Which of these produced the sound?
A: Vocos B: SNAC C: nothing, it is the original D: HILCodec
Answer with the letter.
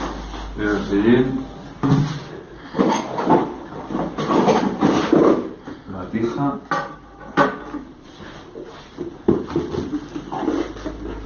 C